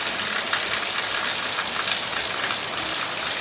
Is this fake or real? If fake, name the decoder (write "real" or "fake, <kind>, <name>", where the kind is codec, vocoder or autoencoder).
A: real